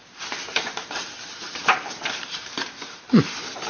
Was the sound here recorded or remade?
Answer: remade